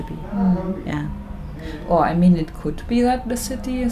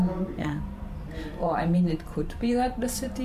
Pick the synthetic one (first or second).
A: second